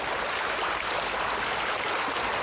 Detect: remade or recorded recorded